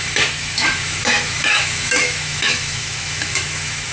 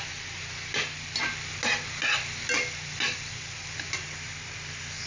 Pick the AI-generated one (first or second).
first